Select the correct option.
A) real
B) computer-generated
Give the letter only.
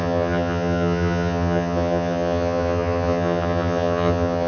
B